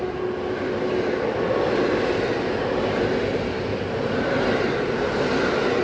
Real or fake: real